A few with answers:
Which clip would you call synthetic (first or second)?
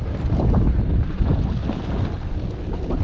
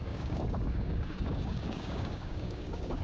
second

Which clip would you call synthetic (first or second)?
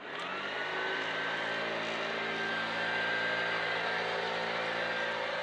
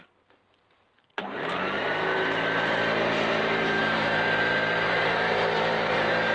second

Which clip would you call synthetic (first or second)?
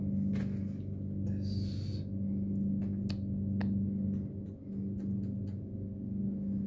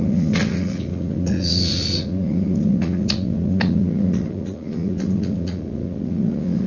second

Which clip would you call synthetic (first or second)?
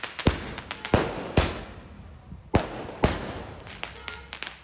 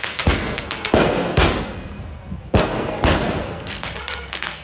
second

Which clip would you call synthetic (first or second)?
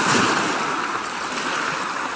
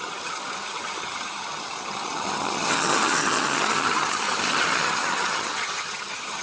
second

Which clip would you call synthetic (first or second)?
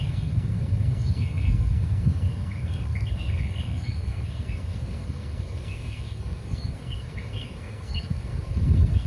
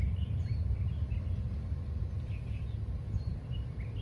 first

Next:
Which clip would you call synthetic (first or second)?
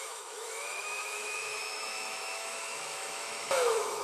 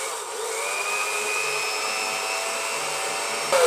first